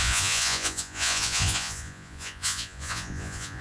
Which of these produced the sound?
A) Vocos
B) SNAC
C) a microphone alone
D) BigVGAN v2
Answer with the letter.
A